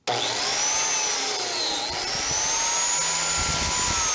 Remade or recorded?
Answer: recorded